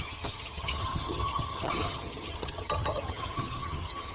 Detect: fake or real fake